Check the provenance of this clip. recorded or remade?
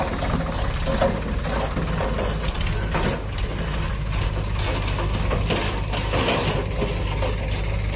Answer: recorded